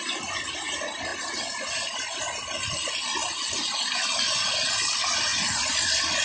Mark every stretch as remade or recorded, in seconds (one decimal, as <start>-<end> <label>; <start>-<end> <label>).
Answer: 0.0-6.2 recorded